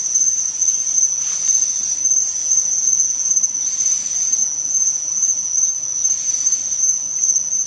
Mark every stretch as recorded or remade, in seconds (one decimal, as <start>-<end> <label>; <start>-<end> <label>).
0.0-2.4 recorded; 2.4-3.3 remade; 3.3-4.4 recorded; 4.4-5.5 remade; 5.5-7.7 recorded